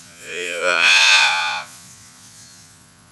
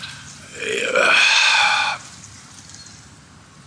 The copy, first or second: first